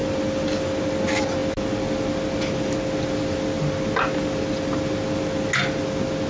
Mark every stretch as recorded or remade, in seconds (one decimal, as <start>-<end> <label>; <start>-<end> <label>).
0.0-6.3 recorded